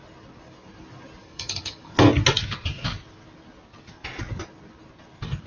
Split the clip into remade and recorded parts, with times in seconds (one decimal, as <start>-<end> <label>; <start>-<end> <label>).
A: 0.0-1.2 recorded; 1.2-1.9 remade; 1.9-5.5 recorded